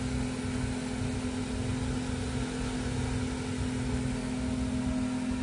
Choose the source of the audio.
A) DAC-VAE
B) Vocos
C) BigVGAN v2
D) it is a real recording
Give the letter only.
D